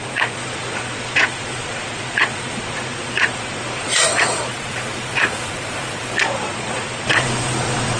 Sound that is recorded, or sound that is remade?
remade